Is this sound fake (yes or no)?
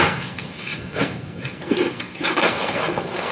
yes